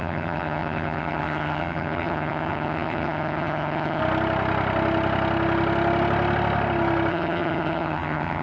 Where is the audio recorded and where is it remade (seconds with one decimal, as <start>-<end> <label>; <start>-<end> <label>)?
0.0-4.0 remade; 4.0-7.1 recorded; 7.1-8.4 remade